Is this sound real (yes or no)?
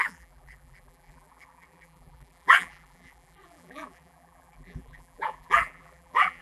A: no